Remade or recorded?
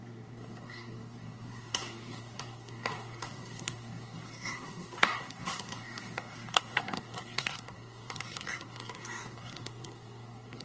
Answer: remade